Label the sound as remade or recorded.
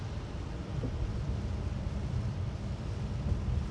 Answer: remade